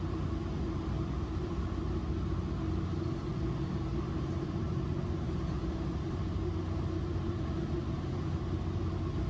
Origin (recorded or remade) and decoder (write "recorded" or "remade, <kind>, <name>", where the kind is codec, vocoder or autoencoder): recorded